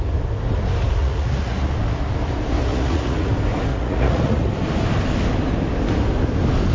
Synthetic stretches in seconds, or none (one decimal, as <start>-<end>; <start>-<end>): 1.0-1.7; 2.7-3.3; 3.7-4.5